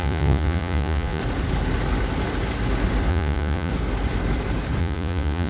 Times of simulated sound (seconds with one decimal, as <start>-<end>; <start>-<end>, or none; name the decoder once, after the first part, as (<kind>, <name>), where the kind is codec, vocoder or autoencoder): 0.0-1.2 (vocoder, Vocos); 3.1-3.7; 4.8-5.5